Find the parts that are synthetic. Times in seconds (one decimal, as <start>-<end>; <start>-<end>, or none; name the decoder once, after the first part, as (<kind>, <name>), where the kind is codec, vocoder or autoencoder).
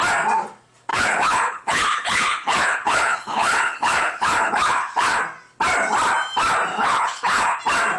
0.9-5.2 (codec, HILCodec); 6.7-7.6